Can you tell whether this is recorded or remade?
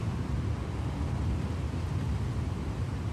recorded